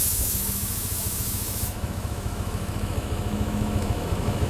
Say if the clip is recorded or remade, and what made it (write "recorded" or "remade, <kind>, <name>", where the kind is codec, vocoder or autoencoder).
remade, autoencoder, DAC-VAE